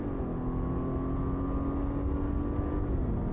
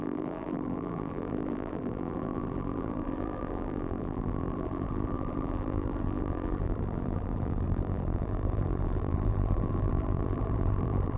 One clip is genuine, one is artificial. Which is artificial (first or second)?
second